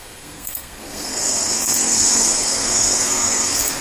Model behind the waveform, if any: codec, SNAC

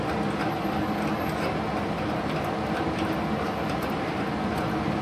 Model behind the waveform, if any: none